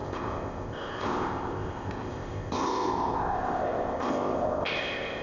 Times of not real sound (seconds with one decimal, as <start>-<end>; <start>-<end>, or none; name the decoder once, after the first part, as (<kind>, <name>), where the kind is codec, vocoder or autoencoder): 0.0-5.2 (codec, ZipCodec)